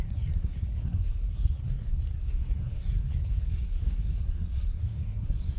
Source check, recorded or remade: remade